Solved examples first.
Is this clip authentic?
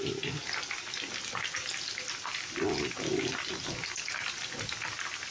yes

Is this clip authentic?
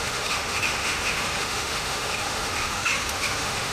no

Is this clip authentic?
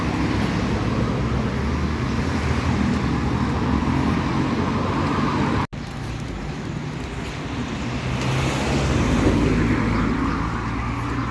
yes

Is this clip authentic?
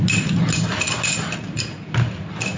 yes